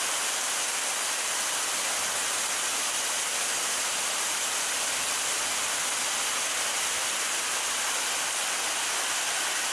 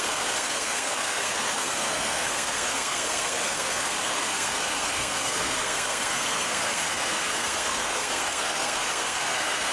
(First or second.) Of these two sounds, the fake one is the second